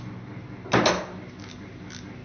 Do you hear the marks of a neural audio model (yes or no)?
no